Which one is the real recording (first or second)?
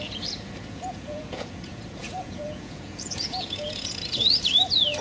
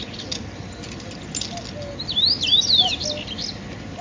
second